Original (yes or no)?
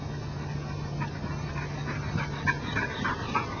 yes